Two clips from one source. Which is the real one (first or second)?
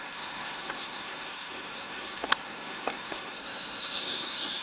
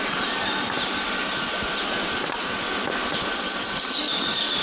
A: second